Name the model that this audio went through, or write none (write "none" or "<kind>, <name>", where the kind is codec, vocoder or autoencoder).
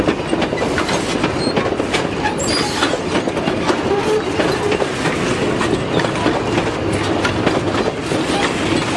none